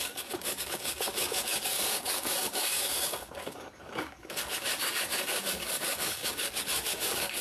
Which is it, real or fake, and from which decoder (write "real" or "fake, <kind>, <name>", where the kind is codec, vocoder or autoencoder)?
fake, codec, DAC